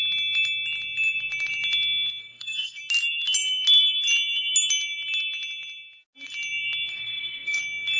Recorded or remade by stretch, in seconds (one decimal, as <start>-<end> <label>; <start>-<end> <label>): 0.0-2.2 recorded; 2.2-2.8 remade; 2.8-6.9 recorded; 6.9-7.6 remade; 7.6-8.0 recorded